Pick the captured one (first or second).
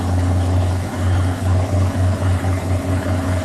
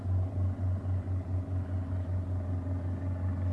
second